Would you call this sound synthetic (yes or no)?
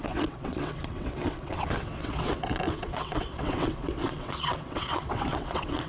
yes